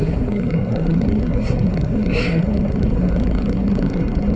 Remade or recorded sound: remade